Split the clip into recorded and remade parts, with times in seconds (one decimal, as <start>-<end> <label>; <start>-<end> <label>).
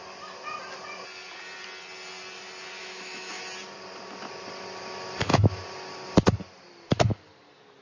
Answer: 0.0-2.8 recorded; 2.8-3.4 remade; 3.4-7.8 recorded